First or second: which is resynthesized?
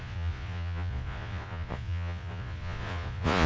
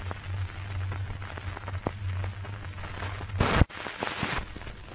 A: first